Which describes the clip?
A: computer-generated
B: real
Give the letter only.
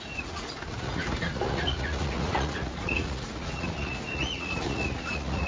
A